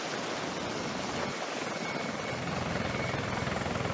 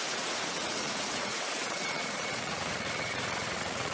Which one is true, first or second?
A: first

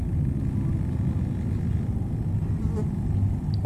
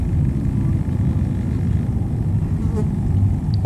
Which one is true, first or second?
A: first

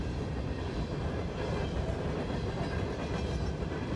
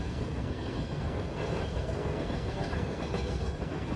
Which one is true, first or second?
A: first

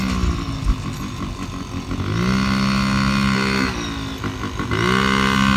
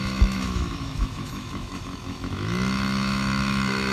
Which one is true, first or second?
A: first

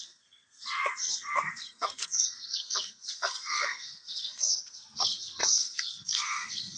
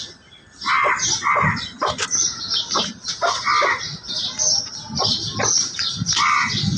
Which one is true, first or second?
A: second